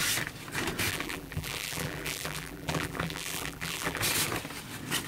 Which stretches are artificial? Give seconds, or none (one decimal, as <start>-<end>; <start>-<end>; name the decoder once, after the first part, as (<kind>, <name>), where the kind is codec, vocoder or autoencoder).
0.9-4.0 (vocoder, BigVGAN v2)